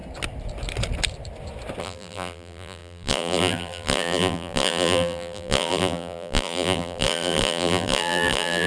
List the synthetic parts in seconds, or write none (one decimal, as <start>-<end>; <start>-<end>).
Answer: 1.8-8.7